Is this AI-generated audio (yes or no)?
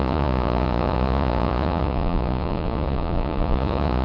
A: yes